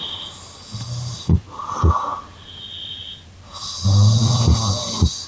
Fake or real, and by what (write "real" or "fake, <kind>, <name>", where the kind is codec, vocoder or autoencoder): real